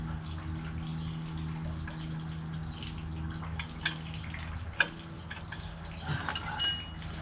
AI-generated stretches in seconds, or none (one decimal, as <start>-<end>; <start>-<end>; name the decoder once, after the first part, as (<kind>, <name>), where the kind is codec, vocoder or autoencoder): none